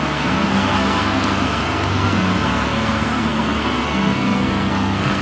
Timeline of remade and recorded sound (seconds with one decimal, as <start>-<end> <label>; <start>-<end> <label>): 0.0-5.2 remade